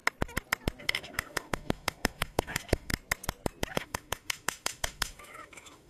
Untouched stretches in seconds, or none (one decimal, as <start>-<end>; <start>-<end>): 0.0-0.8; 2.9-3.7

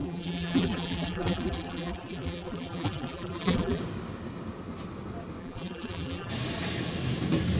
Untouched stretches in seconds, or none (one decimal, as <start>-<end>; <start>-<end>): 3.8-5.4; 6.3-7.6

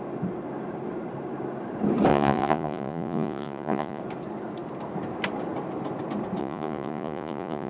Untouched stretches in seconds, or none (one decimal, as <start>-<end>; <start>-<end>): 0.0-2.1; 4.0-6.4

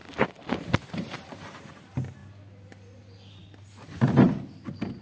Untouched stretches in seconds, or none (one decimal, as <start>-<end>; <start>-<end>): 1.8-5.0

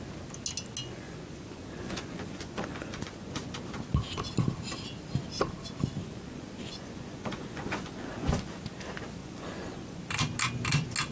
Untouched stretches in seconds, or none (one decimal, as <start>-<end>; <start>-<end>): 0.0-0.8; 3.4-6.0; 8.6-9.2; 10.0-11.1

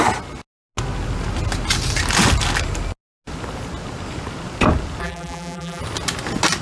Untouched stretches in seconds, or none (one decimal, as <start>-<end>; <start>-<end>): 0.0-5.0; 5.8-6.6

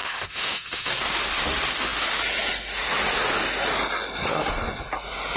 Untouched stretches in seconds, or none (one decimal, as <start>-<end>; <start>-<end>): 0.9-5.4